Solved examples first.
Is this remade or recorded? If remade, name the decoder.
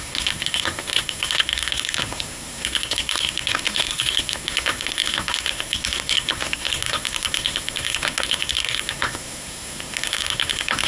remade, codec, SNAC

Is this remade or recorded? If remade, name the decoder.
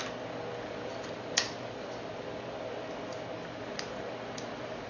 recorded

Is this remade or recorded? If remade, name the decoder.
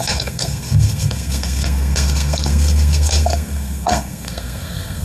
remade, codec, SNAC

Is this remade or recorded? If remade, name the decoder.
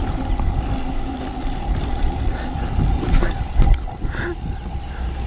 recorded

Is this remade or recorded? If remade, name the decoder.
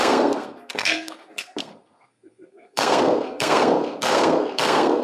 remade, codec, SNAC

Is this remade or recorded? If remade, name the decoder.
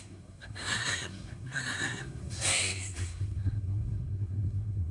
remade, codec, SNAC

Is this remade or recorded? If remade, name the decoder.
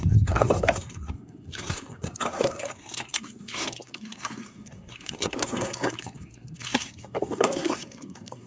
remade, codec, SNAC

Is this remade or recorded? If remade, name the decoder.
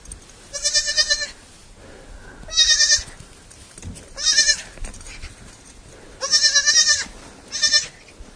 recorded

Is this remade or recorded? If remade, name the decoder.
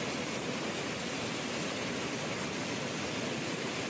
recorded